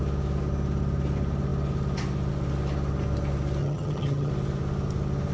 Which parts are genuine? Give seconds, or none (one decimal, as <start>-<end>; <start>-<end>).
0.0-3.6; 4.3-5.3